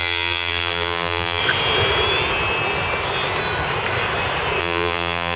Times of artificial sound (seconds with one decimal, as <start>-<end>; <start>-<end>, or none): 0.0-1.4; 4.6-5.4